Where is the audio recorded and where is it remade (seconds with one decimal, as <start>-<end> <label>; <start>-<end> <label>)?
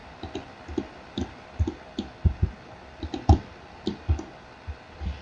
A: 0.0-5.2 recorded